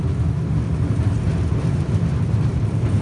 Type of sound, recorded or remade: recorded